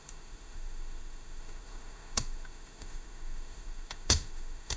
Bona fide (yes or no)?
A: no